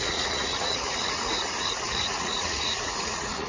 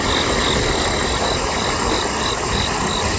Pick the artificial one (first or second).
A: first